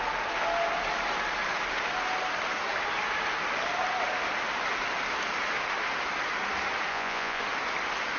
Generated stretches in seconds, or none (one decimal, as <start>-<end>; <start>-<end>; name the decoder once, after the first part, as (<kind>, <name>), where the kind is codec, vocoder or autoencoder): 6.9-7.4 (vocoder, Vocos)